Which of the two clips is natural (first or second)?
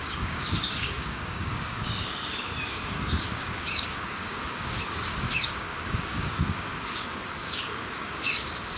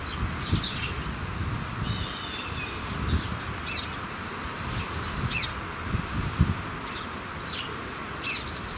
second